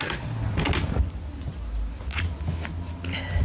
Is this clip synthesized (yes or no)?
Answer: no